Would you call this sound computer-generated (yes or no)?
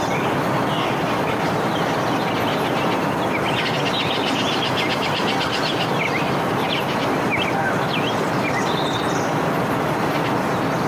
no